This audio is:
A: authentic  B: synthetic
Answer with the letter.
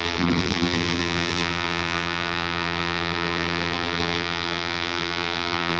B